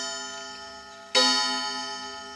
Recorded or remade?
recorded